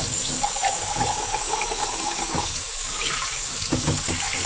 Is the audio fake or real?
fake